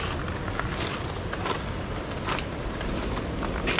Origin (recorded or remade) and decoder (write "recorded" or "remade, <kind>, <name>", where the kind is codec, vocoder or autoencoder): recorded